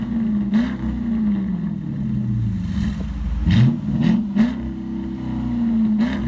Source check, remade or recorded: recorded